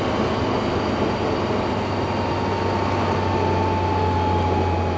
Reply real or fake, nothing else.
real